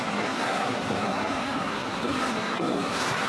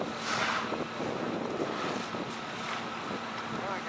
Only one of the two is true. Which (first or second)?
second